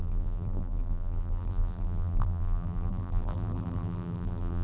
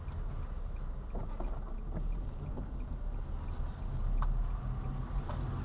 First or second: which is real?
second